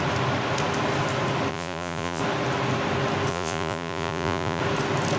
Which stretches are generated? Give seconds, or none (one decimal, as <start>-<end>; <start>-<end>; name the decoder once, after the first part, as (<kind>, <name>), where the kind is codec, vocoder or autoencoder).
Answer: 1.5-2.2 (vocoder, Vocos); 3.3-4.6